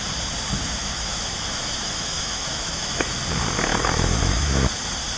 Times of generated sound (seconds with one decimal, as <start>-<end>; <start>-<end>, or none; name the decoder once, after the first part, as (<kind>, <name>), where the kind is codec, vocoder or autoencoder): 0.8-3.2 (autoencoder, DAC-VAE); 3.7-4.5